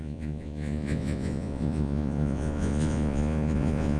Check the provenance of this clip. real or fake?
fake